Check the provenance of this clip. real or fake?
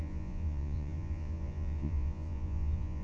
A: fake